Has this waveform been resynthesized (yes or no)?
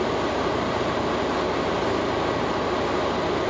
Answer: no